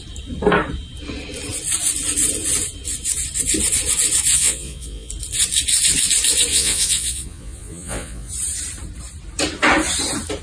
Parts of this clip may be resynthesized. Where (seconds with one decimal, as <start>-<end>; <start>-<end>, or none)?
4.3-5.1; 6.5-8.3